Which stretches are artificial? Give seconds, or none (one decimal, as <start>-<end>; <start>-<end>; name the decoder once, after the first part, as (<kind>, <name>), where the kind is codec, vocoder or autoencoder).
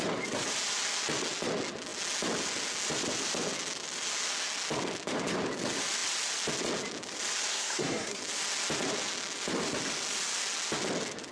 7.5-8.2 (codec, SNAC)